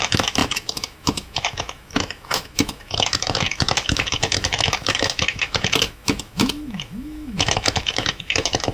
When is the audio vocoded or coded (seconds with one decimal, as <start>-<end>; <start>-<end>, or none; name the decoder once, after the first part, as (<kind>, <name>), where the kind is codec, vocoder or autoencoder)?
0.0-8.7 (autoencoder, DAC-VAE)